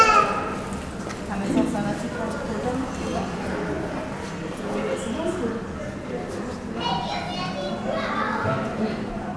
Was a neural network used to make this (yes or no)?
no